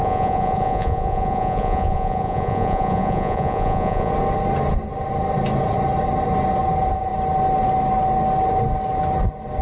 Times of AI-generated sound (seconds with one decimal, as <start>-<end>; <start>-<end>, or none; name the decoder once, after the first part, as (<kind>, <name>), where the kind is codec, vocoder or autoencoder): 0.0-4.1 (vocoder, Vocos)